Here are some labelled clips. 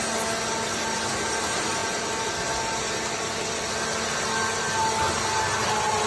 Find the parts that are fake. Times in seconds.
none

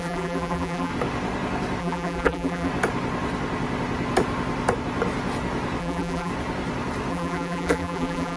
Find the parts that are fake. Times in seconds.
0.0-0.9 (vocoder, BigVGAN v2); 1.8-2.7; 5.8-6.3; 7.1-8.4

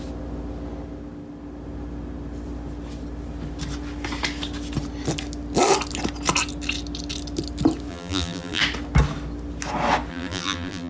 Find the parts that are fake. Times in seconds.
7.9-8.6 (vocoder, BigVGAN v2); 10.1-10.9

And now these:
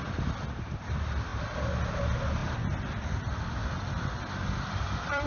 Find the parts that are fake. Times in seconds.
2.4-5.3 (vocoder, BigVGAN v2)

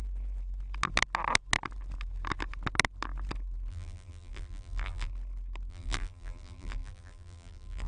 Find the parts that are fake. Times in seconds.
3.7-5.1 (vocoder, BigVGAN v2); 5.7-7.9

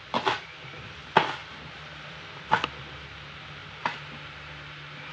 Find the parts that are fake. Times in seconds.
1.4-2.2 (vocoder, BigVGAN v2); 3.6-5.1

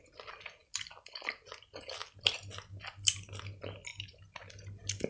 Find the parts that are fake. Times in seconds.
0.6-1.2 (vocoder, BigVGAN v2); 2.0-3.4; 3.9-5.1

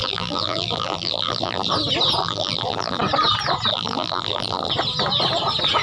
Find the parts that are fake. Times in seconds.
0.0-1.7 (vocoder, BigVGAN v2); 2.2-3.0; 3.7-4.7